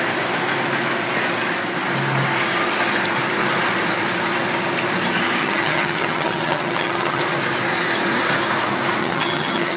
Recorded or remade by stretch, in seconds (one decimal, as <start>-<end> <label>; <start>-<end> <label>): 0.0-5.4 recorded; 5.4-7.2 remade; 7.2-9.0 recorded; 9.0-9.8 remade

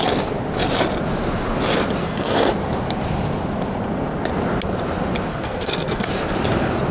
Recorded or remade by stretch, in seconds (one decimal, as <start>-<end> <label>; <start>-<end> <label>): 0.0-2.0 recorded; 2.0-2.5 remade; 2.5-5.3 recorded; 5.3-6.1 remade; 6.1-6.9 recorded

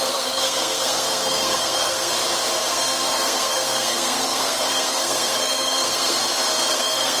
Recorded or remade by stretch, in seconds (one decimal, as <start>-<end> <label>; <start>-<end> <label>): 0.0-2.1 remade; 2.1-2.7 recorded; 2.7-6.2 remade; 6.2-6.7 recorded; 6.7-7.2 remade

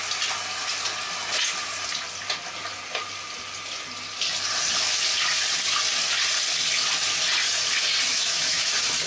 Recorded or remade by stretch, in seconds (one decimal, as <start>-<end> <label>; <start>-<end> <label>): 0.0-8.1 recorded; 8.1-8.7 remade; 8.7-9.1 recorded

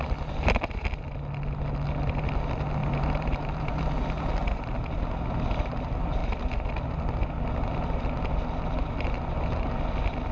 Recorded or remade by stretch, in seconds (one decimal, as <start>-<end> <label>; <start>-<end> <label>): 0.0-2.8 recorded; 2.8-3.8 remade; 3.8-10.3 recorded

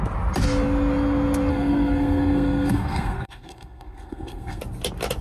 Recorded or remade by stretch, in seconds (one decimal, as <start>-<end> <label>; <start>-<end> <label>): 0.0-1.5 recorded; 1.5-4.6 remade; 4.6-5.2 recorded